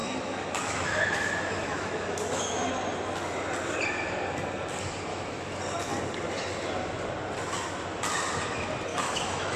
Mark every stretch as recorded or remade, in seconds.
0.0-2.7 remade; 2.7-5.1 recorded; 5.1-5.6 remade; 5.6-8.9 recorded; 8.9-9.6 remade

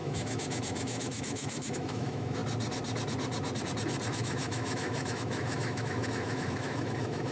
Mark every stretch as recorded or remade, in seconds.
0.0-2.4 remade; 2.4-4.1 recorded; 4.1-7.3 remade